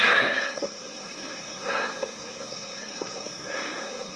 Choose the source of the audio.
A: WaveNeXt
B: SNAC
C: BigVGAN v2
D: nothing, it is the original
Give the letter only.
B